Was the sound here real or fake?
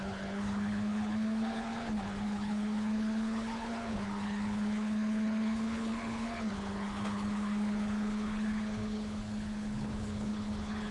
fake